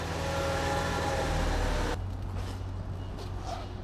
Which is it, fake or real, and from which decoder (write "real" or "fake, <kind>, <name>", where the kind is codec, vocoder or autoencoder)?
real